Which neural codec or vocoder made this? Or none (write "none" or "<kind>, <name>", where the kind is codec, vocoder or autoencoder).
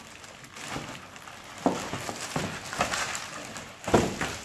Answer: none